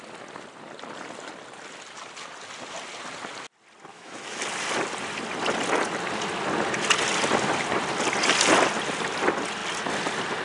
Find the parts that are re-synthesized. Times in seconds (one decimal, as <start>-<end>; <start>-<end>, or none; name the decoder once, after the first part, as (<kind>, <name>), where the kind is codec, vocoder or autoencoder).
3.9-4.4 (autoencoder, DAC-VAE)